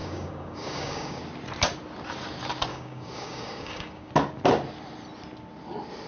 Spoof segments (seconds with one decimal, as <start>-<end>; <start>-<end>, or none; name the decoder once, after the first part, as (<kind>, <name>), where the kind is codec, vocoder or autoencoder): 0.0-1.2 (codec, DAC); 2.7-4.1